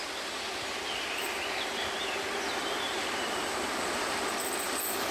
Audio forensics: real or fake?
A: fake